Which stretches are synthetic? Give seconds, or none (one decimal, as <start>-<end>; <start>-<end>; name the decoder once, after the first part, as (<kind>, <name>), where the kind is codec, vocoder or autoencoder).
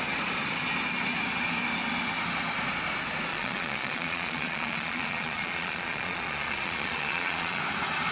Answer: 3.3-7.6 (vocoder, Vocos)